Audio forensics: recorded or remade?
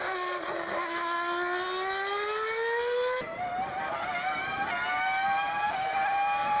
recorded